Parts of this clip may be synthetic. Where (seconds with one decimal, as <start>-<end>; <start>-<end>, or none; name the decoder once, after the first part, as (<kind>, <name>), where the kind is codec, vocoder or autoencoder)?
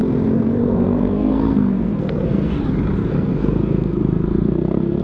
0.0-2.6 (codec, SNAC); 3.0-5.0